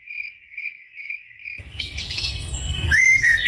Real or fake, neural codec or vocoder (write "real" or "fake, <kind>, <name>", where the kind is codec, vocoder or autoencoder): fake, codec, SNAC